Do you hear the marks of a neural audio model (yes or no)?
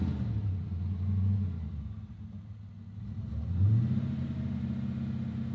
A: no